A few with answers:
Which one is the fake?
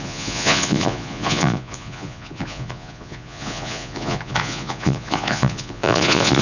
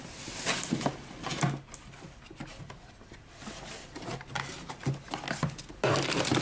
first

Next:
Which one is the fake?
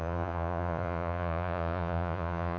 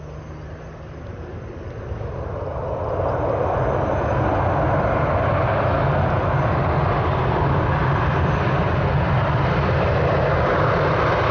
first